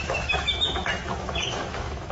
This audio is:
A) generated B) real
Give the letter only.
A